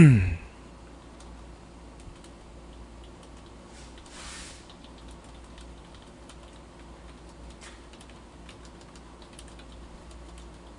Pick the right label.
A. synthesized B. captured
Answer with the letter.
B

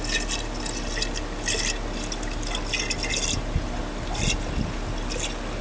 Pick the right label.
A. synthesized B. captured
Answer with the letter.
B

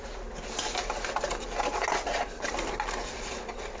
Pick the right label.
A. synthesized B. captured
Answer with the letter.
B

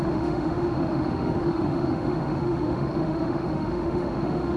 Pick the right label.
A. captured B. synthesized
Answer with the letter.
B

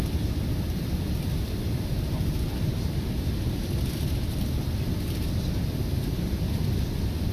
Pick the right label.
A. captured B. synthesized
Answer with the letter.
A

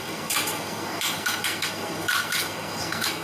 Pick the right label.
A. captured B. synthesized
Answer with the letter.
B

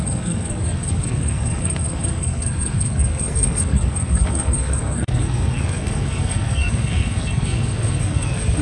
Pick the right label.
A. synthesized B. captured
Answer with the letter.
A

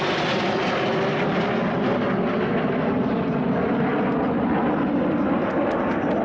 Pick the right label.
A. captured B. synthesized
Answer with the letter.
A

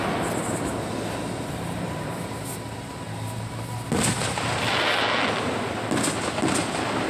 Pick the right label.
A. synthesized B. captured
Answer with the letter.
B